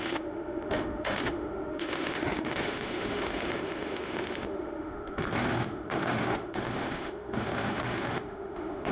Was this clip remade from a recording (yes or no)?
yes